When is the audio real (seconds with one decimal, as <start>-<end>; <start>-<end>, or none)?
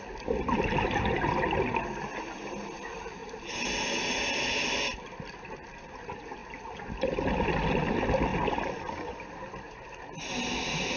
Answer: 0.0-11.0